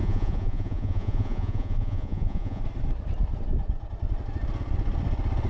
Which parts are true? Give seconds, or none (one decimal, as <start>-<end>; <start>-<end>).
2.6-5.5